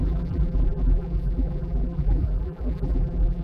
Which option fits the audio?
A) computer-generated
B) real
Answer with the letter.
A